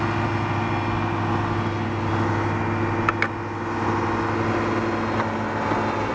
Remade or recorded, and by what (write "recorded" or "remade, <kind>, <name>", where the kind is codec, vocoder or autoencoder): recorded